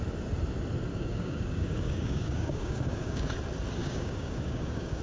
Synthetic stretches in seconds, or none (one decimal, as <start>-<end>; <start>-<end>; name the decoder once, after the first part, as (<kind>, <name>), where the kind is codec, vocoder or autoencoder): 0.9-3.3 (codec, DAC); 3.8-5.0